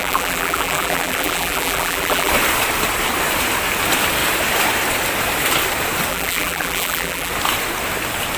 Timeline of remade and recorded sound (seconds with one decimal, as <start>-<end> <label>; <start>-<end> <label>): 0.0-2.3 remade; 2.3-6.1 recorded; 6.1-7.3 remade; 7.3-8.4 recorded